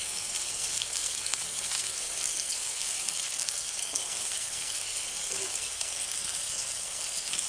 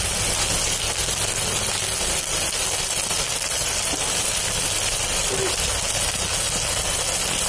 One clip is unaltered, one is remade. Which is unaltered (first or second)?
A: second